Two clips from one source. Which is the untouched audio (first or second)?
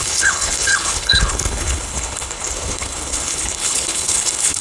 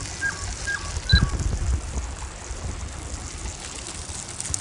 second